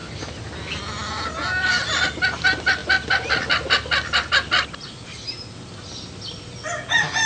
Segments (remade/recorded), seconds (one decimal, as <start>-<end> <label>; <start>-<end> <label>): 0.0-0.8 remade; 0.8-7.3 recorded